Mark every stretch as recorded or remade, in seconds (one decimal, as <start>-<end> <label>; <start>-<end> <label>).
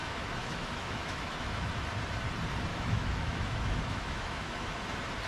0.0-1.7 remade; 1.7-2.7 recorded; 2.7-4.7 remade; 4.7-5.3 recorded